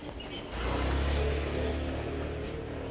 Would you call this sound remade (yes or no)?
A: no